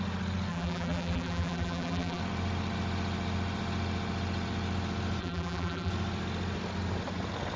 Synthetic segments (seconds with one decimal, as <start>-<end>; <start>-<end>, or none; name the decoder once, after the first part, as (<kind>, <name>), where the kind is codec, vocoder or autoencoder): 0.5-2.2 (vocoder, BigVGAN v2); 5.2-5.9